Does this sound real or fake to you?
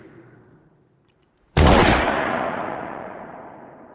fake